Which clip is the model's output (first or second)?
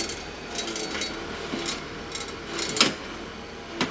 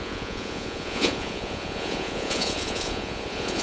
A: second